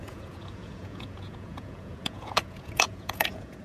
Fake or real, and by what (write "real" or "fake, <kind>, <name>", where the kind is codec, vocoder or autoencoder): fake, vocoder, Vocos